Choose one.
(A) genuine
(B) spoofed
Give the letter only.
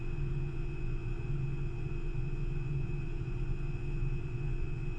B